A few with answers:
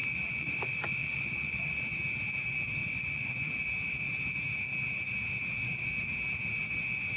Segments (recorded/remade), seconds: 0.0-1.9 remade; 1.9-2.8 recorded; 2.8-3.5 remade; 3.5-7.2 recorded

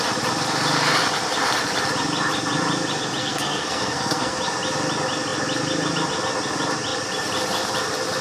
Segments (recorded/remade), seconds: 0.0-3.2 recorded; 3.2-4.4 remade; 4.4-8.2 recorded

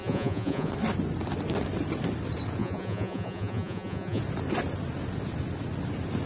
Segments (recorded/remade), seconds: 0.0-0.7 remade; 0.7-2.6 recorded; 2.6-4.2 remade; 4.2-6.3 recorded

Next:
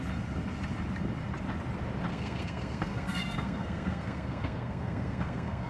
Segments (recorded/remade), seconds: 0.0-2.1 recorded; 2.1-5.7 remade

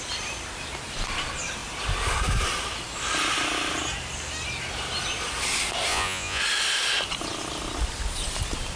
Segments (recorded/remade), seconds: 0.0-5.9 recorded; 5.9-6.4 remade; 6.4-8.8 recorded

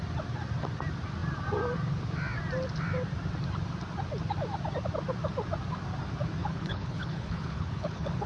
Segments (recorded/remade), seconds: 0.0-6.4 recorded; 6.4-8.3 remade

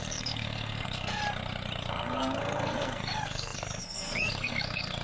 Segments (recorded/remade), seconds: 0.0-1.2 remade; 1.2-1.9 recorded; 1.9-5.0 remade

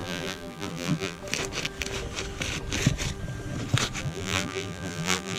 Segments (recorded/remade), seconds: 0.0-1.2 remade; 1.2-4.0 recorded; 4.0-5.4 remade